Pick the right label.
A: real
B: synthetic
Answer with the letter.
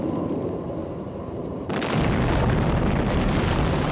B